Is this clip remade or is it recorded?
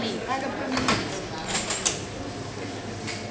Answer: recorded